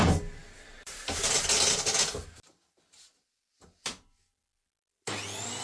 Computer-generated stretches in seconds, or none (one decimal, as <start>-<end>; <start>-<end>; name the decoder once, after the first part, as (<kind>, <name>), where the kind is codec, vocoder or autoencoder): none